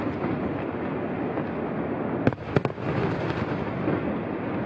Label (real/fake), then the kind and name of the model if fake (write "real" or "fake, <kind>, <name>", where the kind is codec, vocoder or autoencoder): real